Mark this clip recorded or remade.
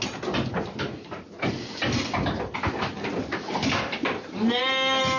recorded